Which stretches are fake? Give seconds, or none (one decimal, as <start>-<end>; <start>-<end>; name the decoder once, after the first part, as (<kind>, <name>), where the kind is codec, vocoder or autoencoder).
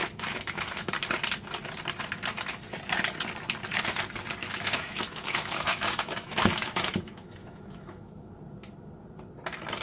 0.0-0.9 (autoencoder, DAC-VAE); 4.4-8.3